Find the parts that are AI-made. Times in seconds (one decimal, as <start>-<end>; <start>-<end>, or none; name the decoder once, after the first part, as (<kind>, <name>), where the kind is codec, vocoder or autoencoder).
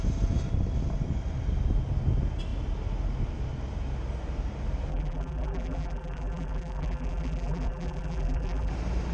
4.9-8.7 (vocoder, BigVGAN v2)